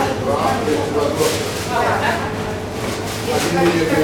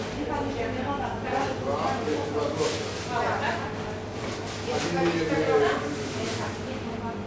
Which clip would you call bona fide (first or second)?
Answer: second